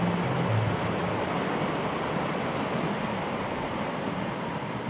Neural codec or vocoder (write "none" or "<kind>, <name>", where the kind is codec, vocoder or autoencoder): none